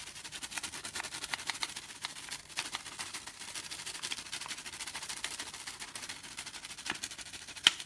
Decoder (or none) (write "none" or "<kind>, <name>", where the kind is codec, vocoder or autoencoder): vocoder, BigVGAN v2